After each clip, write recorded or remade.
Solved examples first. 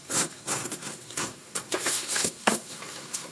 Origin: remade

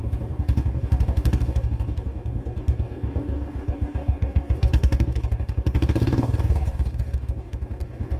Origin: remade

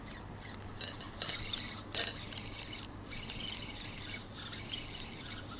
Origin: recorded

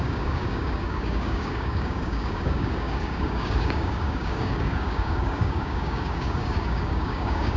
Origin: remade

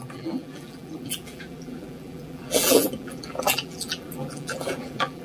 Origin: remade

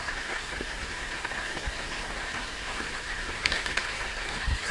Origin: remade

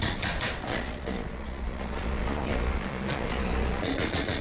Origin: remade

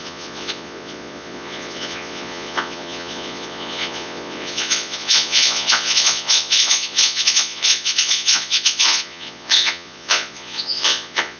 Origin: remade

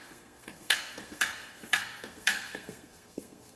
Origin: remade